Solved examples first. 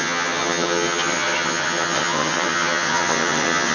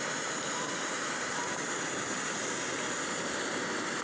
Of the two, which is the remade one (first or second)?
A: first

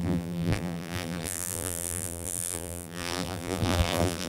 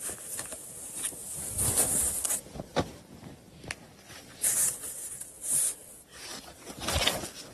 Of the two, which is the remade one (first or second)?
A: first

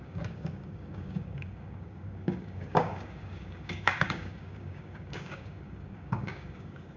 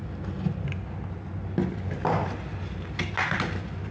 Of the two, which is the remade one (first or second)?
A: first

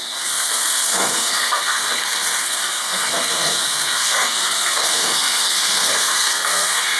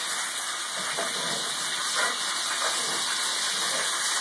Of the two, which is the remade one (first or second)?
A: first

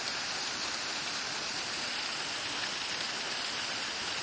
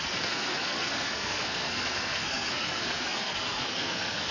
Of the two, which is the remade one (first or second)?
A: second